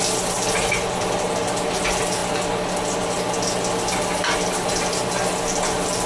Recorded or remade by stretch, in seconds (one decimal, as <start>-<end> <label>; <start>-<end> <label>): 0.0-6.1 recorded